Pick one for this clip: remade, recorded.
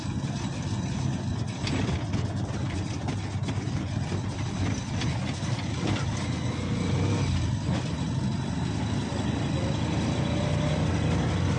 recorded